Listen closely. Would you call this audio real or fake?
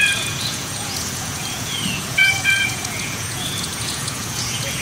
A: fake